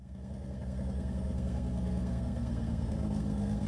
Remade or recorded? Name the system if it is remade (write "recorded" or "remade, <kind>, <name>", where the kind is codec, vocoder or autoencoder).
remade, codec, SNAC